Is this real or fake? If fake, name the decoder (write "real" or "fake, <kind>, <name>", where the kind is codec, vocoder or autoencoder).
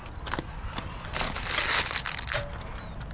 real